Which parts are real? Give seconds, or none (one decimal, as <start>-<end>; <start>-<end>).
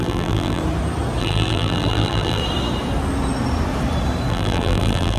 0.6-1.2; 2.4-4.3